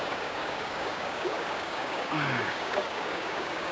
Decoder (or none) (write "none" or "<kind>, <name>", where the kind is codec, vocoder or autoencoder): codec, DAC